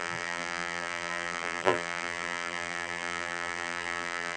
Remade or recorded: remade